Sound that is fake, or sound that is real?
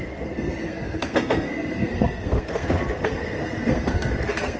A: fake